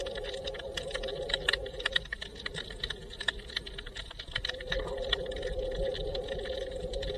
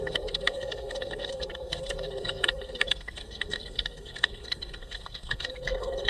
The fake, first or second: second